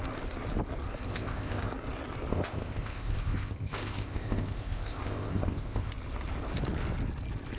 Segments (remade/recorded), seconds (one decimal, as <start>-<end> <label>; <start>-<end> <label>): 0.0-1.1 recorded; 1.1-1.7 remade; 1.7-2.3 recorded; 2.3-5.9 remade; 5.9-7.6 recorded